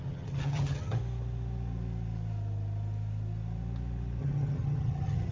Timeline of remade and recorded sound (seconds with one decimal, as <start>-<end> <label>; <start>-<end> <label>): 0.0-1.0 remade; 1.0-4.2 recorded; 4.2-5.3 remade